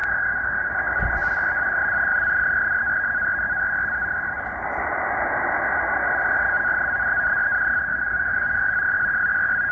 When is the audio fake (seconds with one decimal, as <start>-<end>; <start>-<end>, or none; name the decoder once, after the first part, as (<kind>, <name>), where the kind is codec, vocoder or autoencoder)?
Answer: 0.0-0.7 (codec, DAC); 7.9-8.7